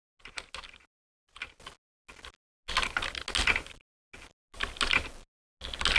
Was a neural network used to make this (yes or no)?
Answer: no